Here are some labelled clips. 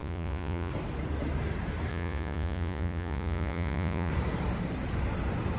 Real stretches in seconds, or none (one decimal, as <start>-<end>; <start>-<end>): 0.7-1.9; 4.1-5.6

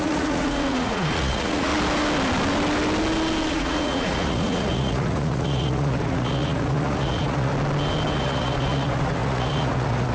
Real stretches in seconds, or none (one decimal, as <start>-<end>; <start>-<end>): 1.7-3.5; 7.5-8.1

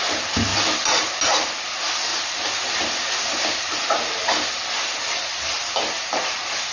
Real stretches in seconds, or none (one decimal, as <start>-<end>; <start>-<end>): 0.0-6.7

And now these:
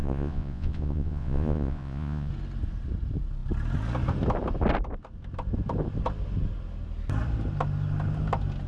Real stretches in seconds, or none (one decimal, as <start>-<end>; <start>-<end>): 2.3-8.7

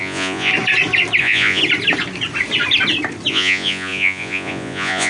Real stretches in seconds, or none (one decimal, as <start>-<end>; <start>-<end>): 0.5-1.2; 1.6-3.3

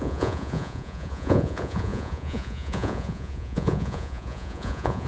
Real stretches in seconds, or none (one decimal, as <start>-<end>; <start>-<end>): none